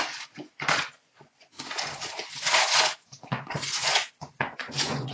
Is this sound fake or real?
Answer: fake